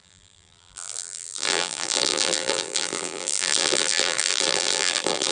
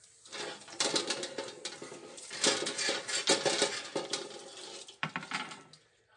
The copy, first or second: first